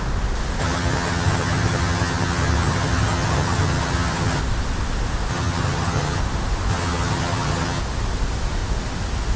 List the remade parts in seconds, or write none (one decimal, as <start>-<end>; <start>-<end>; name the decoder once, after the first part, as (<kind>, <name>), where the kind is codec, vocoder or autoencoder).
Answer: 0.6-4.4 (vocoder, HiFi-GAN); 5.3-6.2; 6.7-7.8